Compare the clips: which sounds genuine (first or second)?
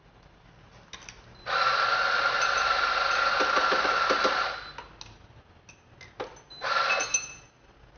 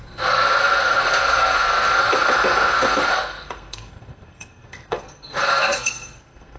first